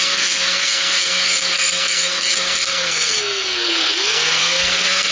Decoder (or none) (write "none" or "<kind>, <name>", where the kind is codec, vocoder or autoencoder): codec, SNAC